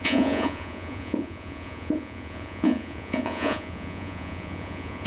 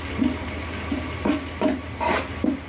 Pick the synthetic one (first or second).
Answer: first